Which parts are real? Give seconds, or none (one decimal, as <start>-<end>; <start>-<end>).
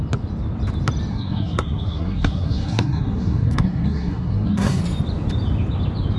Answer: 0.0-1.1; 4.8-6.2